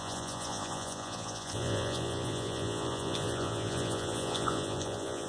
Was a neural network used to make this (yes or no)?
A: yes